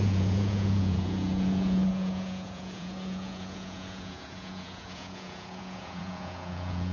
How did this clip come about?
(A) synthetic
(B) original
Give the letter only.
A